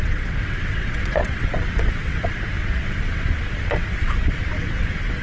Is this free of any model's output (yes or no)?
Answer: no